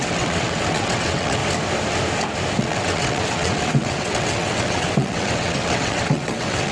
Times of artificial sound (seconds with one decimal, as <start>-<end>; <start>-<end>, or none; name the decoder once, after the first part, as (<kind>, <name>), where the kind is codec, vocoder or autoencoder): 0.0-1.4 (vocoder, WaveNeXt); 2.6-6.7